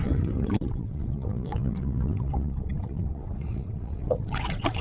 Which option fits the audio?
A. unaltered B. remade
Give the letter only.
B